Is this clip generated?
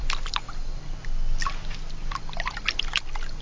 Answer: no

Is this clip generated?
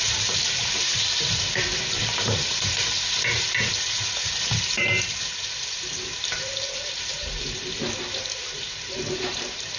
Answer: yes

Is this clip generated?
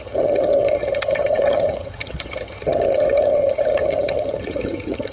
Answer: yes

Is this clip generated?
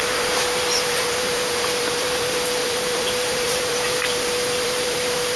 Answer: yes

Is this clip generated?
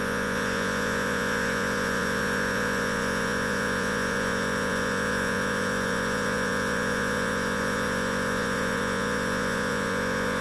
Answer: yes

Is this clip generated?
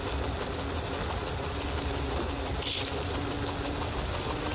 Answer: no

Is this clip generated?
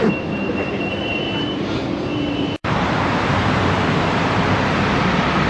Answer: yes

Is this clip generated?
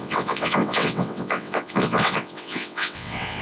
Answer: yes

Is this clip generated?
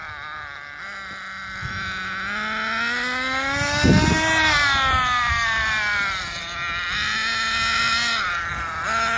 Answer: no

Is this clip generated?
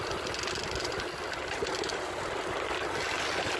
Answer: no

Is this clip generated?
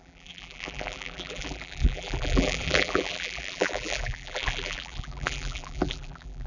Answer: yes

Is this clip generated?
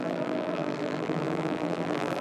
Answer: yes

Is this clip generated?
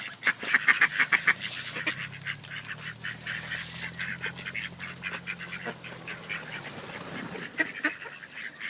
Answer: no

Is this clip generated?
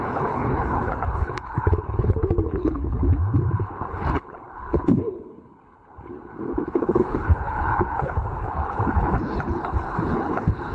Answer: yes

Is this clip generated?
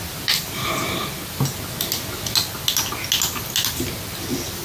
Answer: no